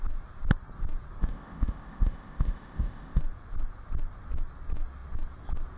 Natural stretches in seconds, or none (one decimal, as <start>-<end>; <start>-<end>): 0.0-1.2; 3.2-5.8